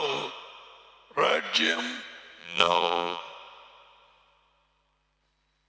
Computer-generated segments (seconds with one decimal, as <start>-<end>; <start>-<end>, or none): 2.4-3.2

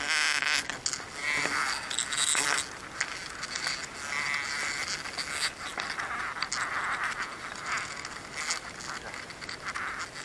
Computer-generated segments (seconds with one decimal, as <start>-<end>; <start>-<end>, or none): none

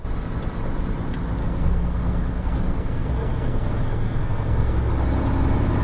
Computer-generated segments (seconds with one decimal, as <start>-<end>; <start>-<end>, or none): 1.4-4.9

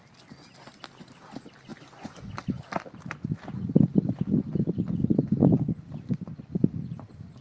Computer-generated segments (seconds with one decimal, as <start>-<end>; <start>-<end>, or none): 1.7-2.3; 5.0-5.5

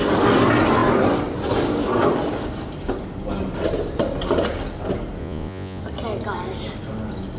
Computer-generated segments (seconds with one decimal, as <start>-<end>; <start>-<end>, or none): 5.2-5.8

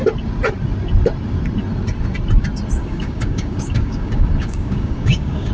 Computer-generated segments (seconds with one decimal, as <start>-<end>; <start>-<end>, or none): 2.8-5.5

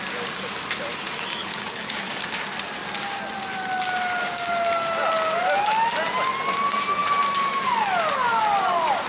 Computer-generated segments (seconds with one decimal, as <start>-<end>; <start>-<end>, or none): 1.4-2.1

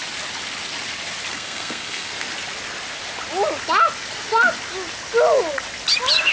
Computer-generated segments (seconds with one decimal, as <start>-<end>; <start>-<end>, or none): 1.3-2.1